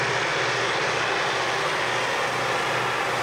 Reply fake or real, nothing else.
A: real